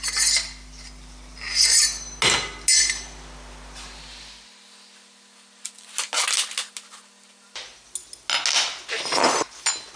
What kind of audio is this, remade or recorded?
recorded